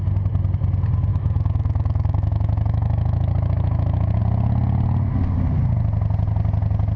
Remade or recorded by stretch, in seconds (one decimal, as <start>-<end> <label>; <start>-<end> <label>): 0.0-1.1 recorded; 1.1-4.2 remade; 4.2-7.0 recorded